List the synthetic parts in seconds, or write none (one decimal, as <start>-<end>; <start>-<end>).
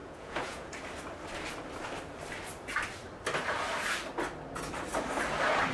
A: 0.0-0.7